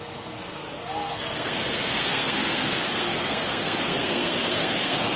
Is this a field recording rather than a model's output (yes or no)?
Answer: no